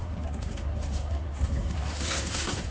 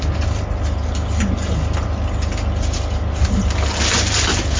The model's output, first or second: first